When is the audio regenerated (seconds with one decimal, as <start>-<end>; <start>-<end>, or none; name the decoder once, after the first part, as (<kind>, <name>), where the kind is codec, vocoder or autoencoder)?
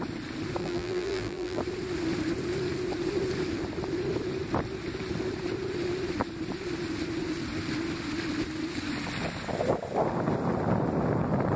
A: 0.6-1.6 (vocoder, BigVGAN v2)